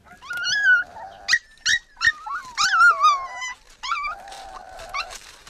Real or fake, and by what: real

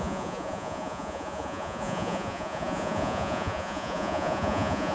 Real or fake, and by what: fake, vocoder, Vocos